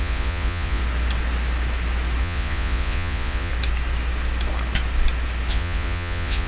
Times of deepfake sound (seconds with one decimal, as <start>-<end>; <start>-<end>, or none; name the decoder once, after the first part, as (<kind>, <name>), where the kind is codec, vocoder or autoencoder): 0.0-0.8 (vocoder, Vocos); 2.2-3.5; 5.5-6.5